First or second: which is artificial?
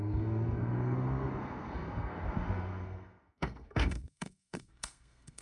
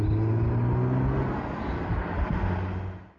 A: first